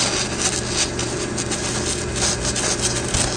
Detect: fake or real real